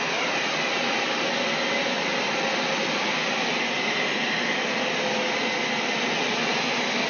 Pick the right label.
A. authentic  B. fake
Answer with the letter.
A